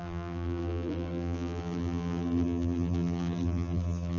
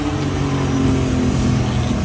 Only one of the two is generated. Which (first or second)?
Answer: first